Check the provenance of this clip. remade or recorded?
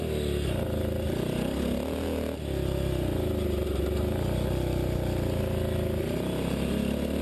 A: recorded